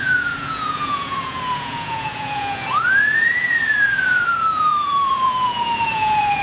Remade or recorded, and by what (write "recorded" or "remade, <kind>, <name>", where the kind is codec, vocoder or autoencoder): remade, vocoder, Vocos